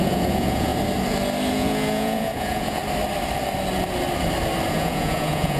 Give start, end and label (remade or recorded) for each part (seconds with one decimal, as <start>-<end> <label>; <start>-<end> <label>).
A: 0.0-0.7 remade; 0.7-1.5 recorded; 1.5-2.8 remade; 2.8-4.7 recorded; 4.7-5.6 remade